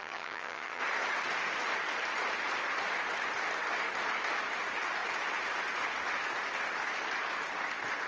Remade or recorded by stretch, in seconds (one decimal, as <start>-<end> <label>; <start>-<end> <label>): 0.0-0.8 remade; 0.8-8.1 recorded